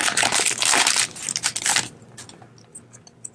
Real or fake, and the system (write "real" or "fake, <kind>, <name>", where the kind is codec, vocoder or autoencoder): real